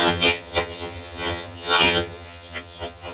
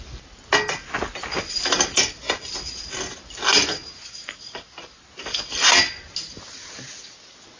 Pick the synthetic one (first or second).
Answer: first